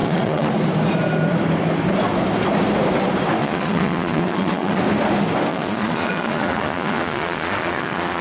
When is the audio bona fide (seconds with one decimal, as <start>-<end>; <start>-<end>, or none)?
0.5-3.4; 4.8-5.5